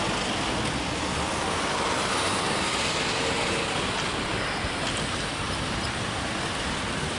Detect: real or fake real